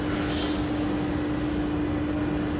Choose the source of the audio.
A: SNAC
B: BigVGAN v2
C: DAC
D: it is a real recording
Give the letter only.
D